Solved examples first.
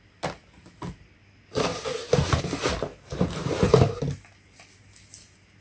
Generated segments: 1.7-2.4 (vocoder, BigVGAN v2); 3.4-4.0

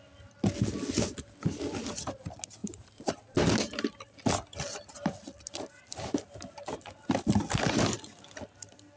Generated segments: 2.6-3.1 (vocoder, BigVGAN v2)

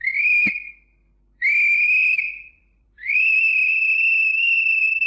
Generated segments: 2.0-3.7 (vocoder, BigVGAN v2)